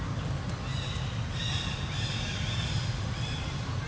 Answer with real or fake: real